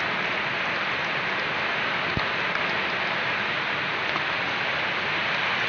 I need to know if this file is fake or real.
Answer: real